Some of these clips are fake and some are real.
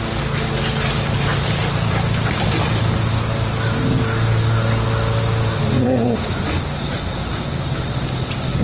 real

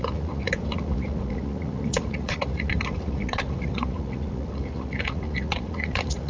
fake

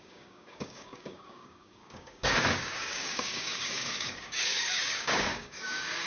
fake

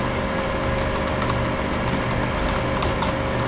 real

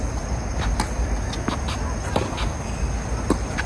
real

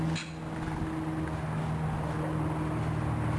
real